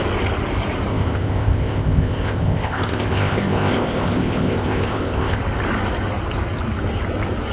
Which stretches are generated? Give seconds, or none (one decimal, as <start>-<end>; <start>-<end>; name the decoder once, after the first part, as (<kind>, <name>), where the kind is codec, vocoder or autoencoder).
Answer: 0.9-5.4 (codec, ZipCodec)